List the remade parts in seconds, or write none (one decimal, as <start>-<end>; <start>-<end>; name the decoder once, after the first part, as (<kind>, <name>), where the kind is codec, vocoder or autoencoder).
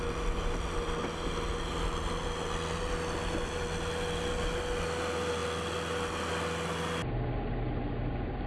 none